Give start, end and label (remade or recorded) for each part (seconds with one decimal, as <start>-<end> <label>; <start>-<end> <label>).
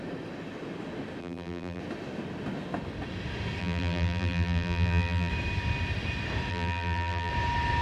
0.0-1.2 recorded; 1.2-1.8 remade; 1.8-3.6 recorded; 3.6-5.3 remade; 5.3-6.5 recorded; 6.5-7.3 remade; 7.3-7.8 recorded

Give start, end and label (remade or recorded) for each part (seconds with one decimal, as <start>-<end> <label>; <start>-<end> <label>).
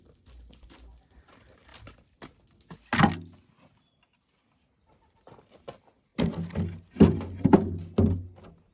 0.0-8.7 recorded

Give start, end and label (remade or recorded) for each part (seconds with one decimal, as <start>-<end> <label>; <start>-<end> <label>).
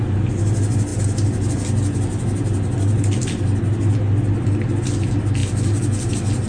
0.0-6.5 recorded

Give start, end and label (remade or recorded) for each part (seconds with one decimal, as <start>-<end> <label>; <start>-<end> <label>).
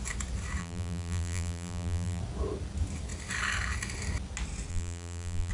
0.0-0.6 recorded; 0.6-2.2 remade; 2.2-4.7 recorded; 4.7-5.5 remade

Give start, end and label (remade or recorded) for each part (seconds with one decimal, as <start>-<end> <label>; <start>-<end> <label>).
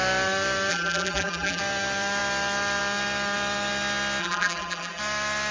0.0-0.7 recorded; 0.7-1.6 remade; 1.6-4.2 recorded; 4.2-5.0 remade; 5.0-5.5 recorded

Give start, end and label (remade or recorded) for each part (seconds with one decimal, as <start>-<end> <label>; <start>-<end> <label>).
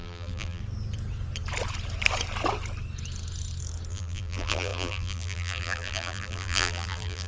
0.0-0.6 remade; 0.6-3.9 recorded; 3.9-7.3 remade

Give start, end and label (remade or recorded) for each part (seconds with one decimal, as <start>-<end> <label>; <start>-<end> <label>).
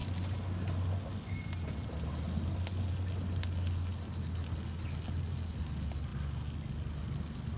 0.0-7.6 recorded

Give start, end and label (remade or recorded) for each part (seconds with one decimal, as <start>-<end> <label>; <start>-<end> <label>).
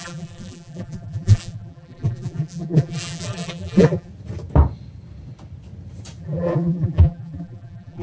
0.0-4.1 remade; 4.1-6.2 recorded; 6.2-8.0 remade